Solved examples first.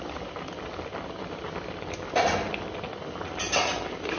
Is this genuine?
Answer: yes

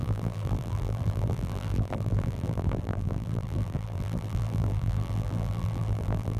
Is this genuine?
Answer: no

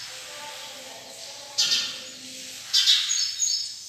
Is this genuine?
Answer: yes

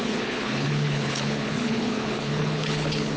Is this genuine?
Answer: no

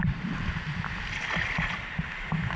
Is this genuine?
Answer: yes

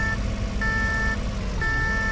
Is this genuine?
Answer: yes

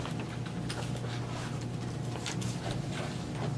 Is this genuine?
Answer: yes